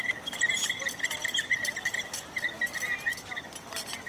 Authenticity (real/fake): real